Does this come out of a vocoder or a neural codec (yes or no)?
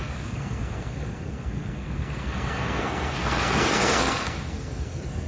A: yes